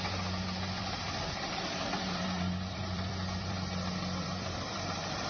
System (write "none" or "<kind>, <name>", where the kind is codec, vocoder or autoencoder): vocoder, BigVGAN v2